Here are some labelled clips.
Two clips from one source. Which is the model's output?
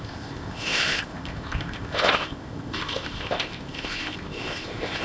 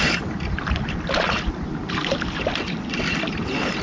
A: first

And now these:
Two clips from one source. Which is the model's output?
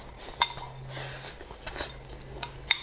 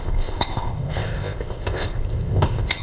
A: second